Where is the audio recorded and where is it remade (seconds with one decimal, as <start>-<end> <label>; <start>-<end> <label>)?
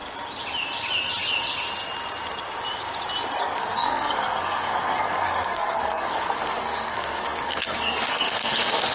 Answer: 0.0-3.4 recorded; 3.4-8.9 remade